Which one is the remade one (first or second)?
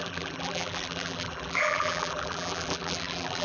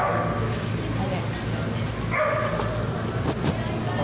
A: first